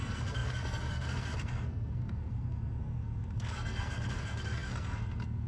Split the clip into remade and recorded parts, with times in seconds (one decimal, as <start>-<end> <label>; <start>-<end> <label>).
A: 0.0-5.5 remade